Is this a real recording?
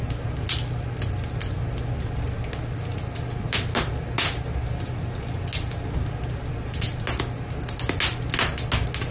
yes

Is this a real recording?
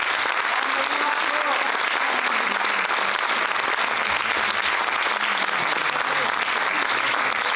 yes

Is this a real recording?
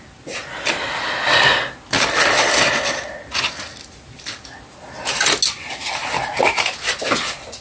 yes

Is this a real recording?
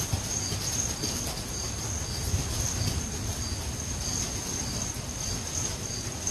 yes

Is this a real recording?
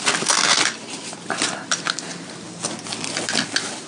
yes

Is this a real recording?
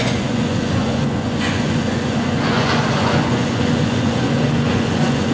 no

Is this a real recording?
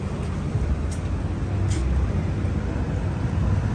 yes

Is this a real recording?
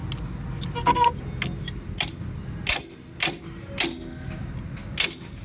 yes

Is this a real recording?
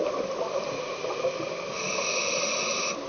yes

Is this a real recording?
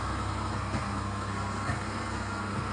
no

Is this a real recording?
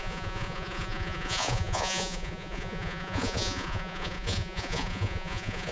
no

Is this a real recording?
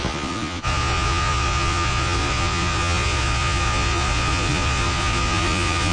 no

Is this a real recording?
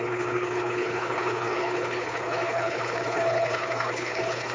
no